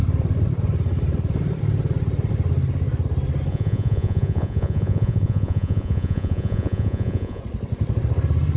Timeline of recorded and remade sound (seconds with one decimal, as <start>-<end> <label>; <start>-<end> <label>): 0.0-3.5 recorded; 3.5-7.4 remade; 7.4-8.6 recorded